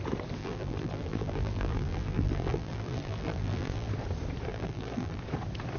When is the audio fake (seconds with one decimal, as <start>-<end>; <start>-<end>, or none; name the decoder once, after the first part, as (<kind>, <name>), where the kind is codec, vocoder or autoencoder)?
0.4-3.9 (vocoder, BigVGAN v2); 4.5-5.2